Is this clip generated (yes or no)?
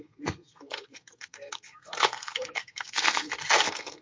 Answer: yes